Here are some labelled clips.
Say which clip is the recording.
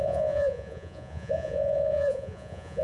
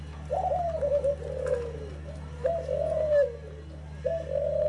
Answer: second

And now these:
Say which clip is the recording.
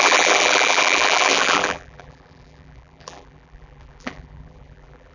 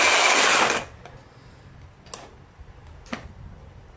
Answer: second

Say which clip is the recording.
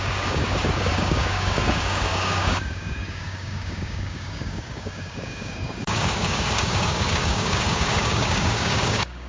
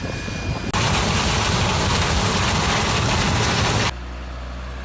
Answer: second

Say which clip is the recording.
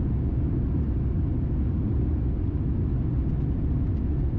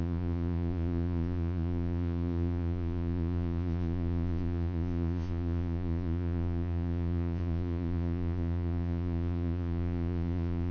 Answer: first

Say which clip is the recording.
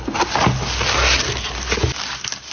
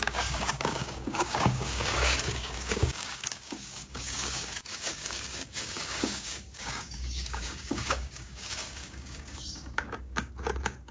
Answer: first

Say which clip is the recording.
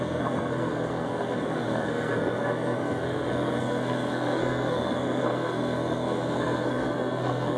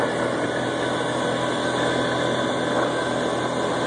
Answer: second